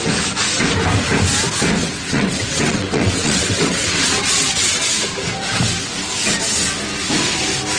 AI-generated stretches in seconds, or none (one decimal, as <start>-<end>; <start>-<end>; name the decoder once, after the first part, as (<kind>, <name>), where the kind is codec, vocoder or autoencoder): 1.8-4.9 (vocoder, WaveNeXt)